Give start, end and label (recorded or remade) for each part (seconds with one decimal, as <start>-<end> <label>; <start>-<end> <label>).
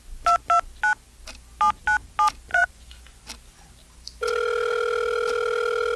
0.0-2.5 recorded; 2.5-3.2 remade; 3.2-6.0 recorded